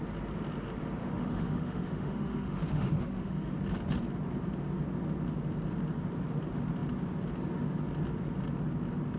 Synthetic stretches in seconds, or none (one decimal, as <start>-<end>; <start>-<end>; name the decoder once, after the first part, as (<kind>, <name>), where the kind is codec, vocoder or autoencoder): 1.0-3.5 (autoencoder, DAC-VAE)